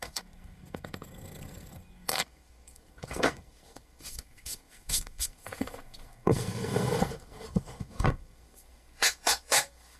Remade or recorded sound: remade